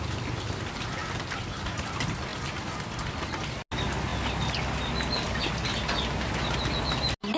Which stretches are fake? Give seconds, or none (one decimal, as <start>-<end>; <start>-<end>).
none